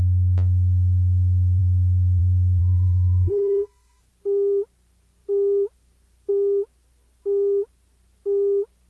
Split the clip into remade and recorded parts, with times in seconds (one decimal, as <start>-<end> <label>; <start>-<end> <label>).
0.0-2.6 recorded; 2.6-4.0 remade; 4.0-8.9 recorded